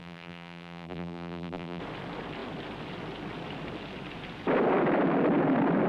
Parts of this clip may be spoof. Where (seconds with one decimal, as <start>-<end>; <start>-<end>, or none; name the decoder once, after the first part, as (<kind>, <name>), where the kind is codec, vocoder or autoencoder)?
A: 0.0-1.8 (vocoder, BigVGAN v2)